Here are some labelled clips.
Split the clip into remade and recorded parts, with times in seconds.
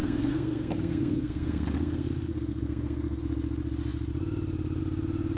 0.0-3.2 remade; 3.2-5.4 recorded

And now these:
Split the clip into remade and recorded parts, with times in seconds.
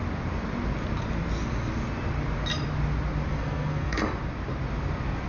0.0-3.3 recorded; 3.3-4.0 remade; 4.0-5.3 recorded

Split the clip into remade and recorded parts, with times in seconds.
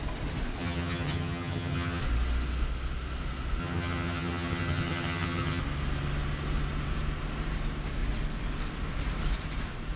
0.0-0.6 recorded; 0.6-2.0 remade; 2.0-3.6 recorded; 3.6-5.6 remade; 5.6-10.0 recorded